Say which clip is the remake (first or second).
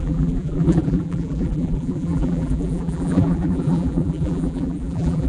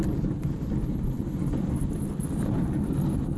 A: first